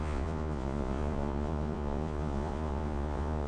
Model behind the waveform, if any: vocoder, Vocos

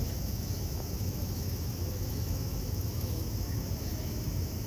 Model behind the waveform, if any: autoencoder, DAC-VAE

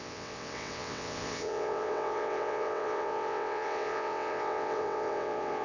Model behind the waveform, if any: vocoder, WaveNeXt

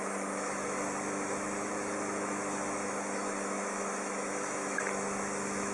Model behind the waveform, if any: autoencoder, DAC-VAE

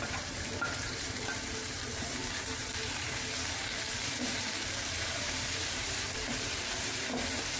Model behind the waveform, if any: vocoder, BigVGAN v2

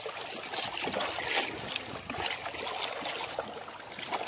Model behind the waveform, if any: none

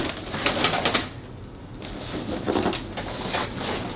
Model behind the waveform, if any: none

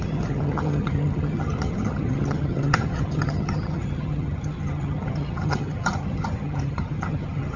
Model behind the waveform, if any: vocoder, HiFi-GAN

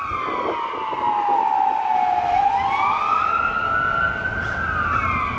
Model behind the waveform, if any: none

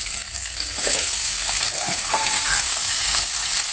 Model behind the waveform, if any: codec, SNAC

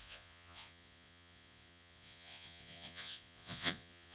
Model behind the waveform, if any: vocoder, Vocos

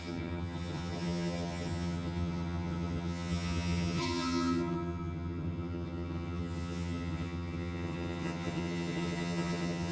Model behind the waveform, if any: vocoder, HiFi-GAN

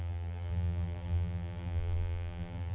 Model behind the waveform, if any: vocoder, BigVGAN v2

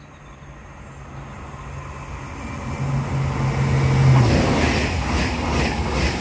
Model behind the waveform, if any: none